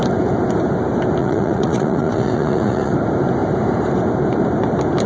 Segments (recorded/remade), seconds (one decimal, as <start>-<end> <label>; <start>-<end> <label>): 0.0-1.2 recorded; 1.2-2.9 remade; 2.9-5.1 recorded